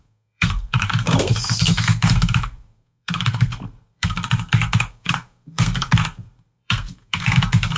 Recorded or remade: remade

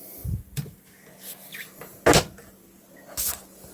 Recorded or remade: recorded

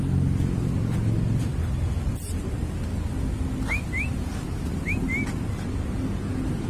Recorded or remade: recorded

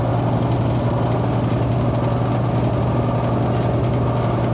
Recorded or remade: recorded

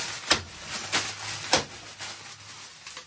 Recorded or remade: recorded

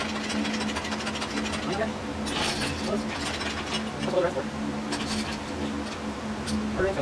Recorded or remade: recorded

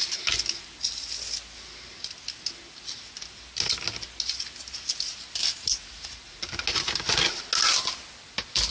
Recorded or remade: recorded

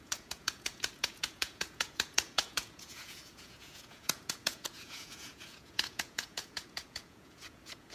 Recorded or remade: remade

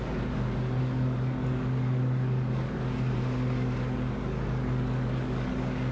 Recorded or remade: remade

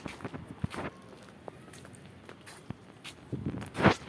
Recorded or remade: recorded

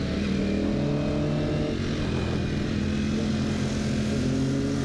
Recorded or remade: recorded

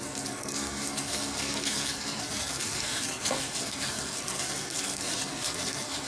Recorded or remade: remade